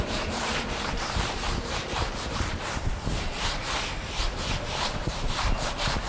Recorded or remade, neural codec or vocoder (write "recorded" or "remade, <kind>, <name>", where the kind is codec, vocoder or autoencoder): remade, vocoder, BigVGAN v2